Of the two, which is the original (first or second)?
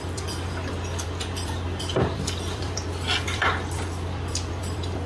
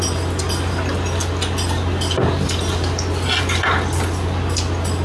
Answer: second